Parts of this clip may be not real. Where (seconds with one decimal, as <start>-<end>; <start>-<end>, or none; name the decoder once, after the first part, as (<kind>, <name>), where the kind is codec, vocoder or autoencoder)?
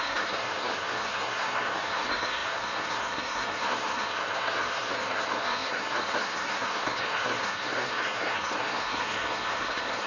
0.0-10.1 (codec, SNAC)